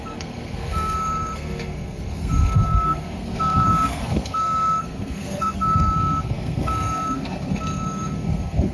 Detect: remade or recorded remade